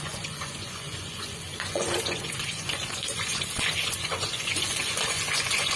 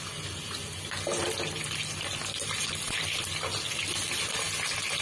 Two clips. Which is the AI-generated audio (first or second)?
first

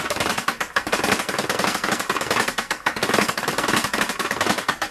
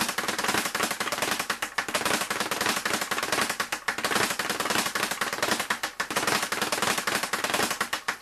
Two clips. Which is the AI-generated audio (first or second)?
first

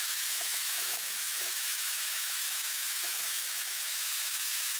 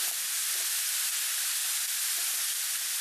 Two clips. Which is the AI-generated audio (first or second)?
first